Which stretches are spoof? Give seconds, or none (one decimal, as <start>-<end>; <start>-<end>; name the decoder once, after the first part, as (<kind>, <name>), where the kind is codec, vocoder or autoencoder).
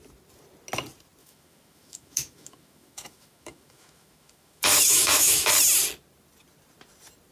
1.2-5.5 (autoencoder, DAC-VAE)